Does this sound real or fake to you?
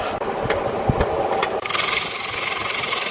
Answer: real